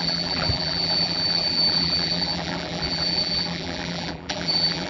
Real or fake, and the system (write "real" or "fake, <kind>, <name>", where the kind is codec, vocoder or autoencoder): fake, vocoder, BigVGAN v2